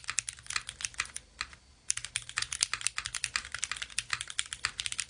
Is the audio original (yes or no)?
yes